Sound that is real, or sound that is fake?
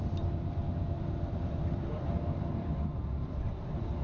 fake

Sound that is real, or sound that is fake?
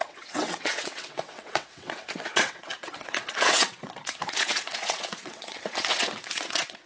fake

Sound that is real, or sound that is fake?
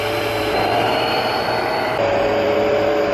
fake